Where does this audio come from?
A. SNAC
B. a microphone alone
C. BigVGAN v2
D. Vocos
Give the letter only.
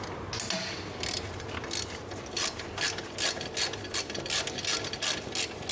B